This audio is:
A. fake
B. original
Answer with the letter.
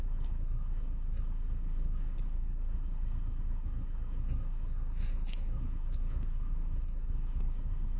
A